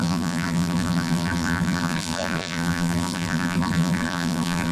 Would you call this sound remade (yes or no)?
yes